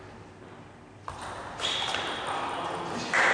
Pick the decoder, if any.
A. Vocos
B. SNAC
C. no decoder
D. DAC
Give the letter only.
C